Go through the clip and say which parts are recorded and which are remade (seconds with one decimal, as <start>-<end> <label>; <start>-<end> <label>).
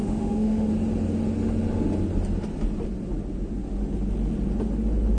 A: 0.0-0.7 remade; 0.7-5.2 recorded